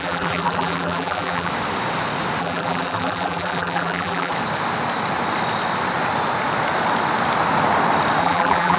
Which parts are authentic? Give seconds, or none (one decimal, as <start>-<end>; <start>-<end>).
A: 1.5-2.4; 4.3-8.2